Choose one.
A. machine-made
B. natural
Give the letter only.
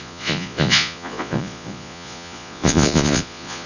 A